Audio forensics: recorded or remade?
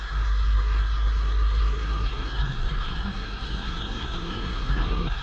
remade